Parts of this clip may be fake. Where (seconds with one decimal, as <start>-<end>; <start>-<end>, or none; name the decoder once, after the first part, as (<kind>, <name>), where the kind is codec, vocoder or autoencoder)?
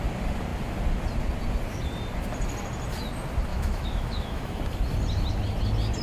3.5-4.6 (autoencoder, DAC-VAE)